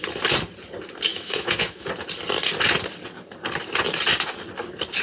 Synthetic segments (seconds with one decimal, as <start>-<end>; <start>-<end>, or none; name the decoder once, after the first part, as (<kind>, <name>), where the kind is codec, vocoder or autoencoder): 1.1-1.9 (autoencoder, DAC-VAE)